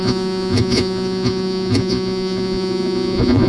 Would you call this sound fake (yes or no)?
yes